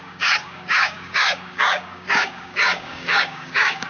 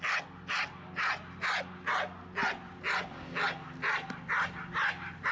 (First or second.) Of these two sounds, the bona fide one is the second